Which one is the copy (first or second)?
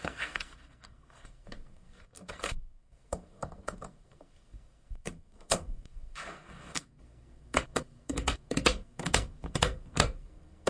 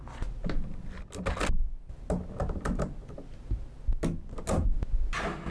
first